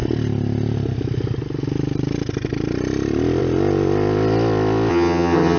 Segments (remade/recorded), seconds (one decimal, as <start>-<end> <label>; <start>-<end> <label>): 0.0-4.9 recorded; 4.9-5.6 remade